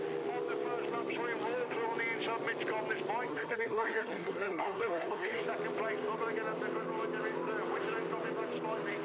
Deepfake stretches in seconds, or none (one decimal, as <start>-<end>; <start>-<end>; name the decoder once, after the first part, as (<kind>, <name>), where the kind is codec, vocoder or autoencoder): 3.3-5.4 (codec, SNAC)